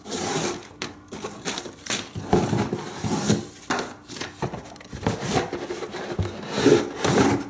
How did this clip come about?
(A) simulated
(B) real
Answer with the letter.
B